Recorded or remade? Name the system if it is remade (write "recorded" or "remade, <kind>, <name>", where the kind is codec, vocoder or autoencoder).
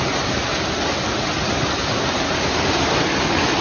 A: recorded